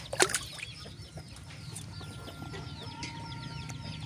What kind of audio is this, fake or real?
real